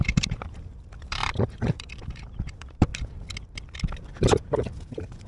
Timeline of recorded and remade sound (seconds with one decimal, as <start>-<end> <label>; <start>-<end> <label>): 0.0-2.9 remade; 2.9-4.3 recorded; 4.3-5.3 remade